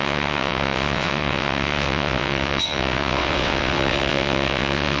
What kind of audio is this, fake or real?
fake